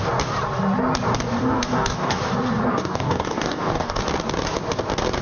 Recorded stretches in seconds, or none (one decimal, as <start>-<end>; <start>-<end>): 0.0-1.4; 2.2-2.7; 4.0-5.2